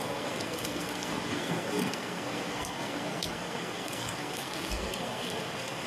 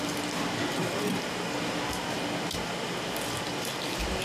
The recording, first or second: second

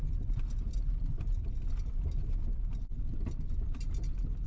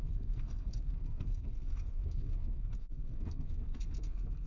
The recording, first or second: first